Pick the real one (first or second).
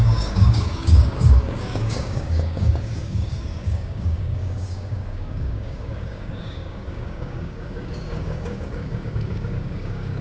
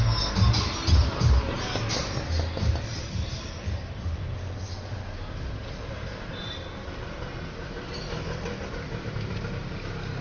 second